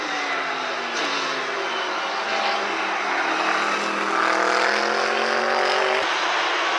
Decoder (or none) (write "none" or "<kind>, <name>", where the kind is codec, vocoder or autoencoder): none